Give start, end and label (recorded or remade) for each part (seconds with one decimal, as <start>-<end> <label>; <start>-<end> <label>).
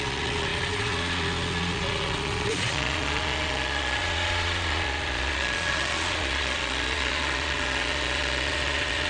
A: 0.0-9.1 remade